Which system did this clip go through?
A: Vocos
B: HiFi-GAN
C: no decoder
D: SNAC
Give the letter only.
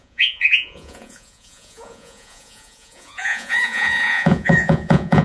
A